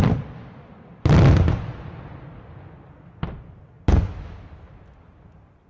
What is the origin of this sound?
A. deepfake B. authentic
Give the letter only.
B